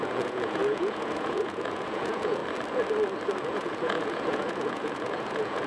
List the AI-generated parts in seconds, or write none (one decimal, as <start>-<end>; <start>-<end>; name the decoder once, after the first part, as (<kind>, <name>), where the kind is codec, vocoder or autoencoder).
0.0-2.4 (vocoder, Vocos); 3.4-5.7